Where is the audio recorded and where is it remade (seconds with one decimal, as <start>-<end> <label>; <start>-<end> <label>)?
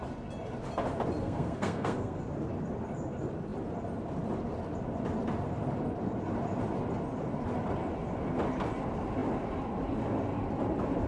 0.0-1.2 recorded; 1.2-2.2 remade; 2.2-11.1 recorded